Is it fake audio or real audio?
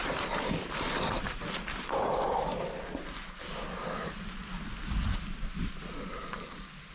real